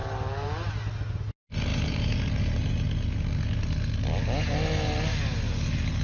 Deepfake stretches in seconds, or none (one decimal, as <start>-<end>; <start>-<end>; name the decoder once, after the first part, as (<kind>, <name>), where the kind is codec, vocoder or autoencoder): 0.0-0.7 (vocoder, BigVGAN v2); 1.7-2.7